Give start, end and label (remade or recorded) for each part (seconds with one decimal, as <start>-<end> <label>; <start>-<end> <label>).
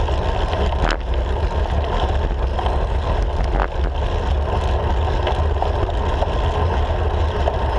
0.0-7.8 recorded